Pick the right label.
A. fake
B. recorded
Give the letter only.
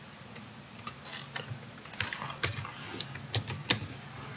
B